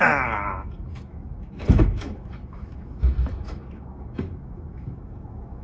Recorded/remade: remade